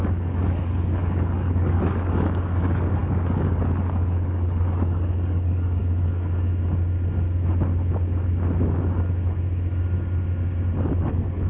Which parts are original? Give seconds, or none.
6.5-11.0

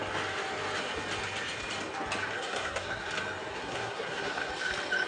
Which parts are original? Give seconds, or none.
0.0-2.2; 3.1-3.5; 4.5-5.1

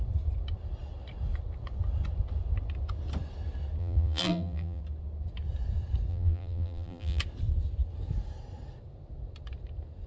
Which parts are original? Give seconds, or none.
0.0-3.8; 4.8-6.1; 7.2-10.1

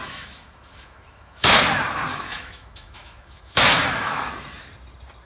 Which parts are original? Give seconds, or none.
1.6-2.1; 4.3-5.3

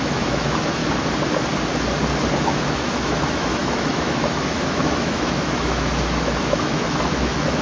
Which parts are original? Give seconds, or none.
0.8-2.3

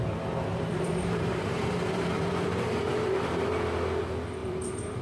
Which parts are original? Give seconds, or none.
0.0-0.5; 3.5-4.4